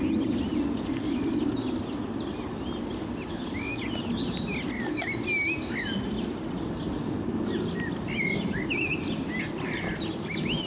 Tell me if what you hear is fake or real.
real